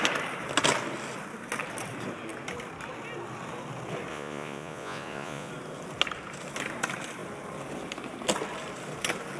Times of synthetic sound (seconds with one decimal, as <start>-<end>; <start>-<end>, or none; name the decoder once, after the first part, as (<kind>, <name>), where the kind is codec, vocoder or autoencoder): 4.1-5.5 (vocoder, Vocos)